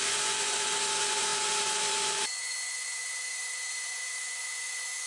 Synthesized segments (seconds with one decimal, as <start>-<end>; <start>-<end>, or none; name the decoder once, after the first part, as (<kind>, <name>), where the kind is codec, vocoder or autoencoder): 0.0-5.1 (vocoder, Vocos)